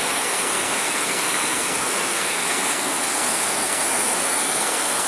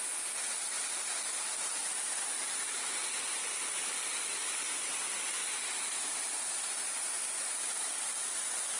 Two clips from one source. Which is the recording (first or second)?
second